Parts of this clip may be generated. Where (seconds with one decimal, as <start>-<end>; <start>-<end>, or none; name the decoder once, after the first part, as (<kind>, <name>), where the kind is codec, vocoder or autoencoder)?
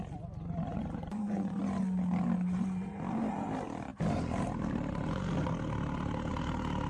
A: 0.7-1.6 (vocoder, Vocos)